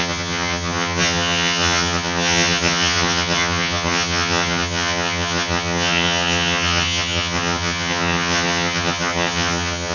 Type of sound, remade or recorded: remade